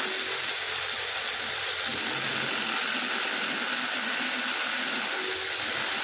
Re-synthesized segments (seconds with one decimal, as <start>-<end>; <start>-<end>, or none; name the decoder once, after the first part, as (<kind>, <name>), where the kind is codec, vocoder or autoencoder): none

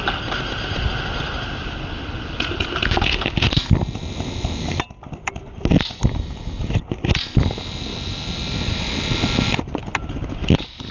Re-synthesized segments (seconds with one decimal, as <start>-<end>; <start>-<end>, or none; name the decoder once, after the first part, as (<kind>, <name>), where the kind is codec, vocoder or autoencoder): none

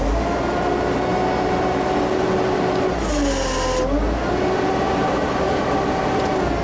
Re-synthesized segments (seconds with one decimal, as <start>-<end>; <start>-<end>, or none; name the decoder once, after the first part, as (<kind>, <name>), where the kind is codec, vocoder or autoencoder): none

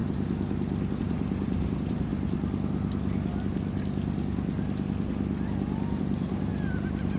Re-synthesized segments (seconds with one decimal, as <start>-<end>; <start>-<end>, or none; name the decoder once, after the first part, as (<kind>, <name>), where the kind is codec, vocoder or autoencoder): 1.0-2.1 (vocoder, BigVGAN v2); 6.0-6.5